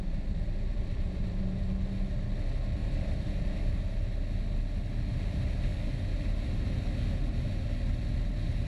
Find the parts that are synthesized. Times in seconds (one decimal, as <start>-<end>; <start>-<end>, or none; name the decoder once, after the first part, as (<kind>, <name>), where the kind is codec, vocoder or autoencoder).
0.7-1.4 (vocoder, BigVGAN v2); 2.8-3.7